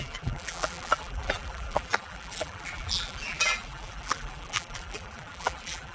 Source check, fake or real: fake